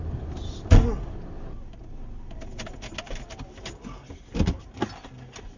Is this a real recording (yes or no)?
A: yes